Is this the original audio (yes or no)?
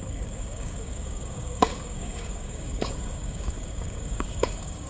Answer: no